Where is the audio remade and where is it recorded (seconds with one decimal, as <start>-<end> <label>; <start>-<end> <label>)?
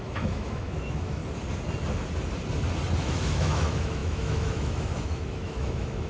0.0-1.2 remade; 1.2-3.0 recorded; 3.0-6.1 remade